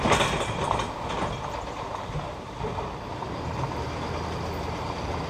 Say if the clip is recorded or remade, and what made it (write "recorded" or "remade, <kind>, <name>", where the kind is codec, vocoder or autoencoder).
recorded